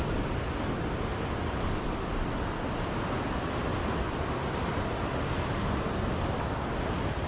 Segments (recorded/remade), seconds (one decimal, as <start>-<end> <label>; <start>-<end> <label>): 0.0-3.7 recorded; 3.7-6.6 remade; 6.6-7.3 recorded

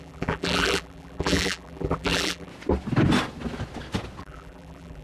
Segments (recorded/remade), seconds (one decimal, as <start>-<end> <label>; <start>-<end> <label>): 0.0-2.5 remade; 2.5-4.2 recorded; 4.2-5.0 remade

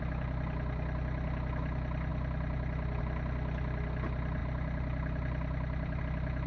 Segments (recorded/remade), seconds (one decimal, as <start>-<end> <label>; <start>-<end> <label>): 0.0-2.1 recorded; 2.1-3.0 remade; 3.0-4.4 recorded; 4.4-6.0 remade; 6.0-6.5 recorded

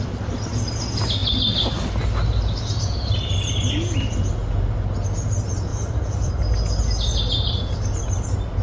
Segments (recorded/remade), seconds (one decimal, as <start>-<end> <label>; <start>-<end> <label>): 0.0-5.7 recorded; 5.7-6.3 remade; 6.3-8.6 recorded